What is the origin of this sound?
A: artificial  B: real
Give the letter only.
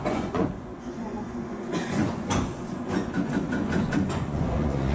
A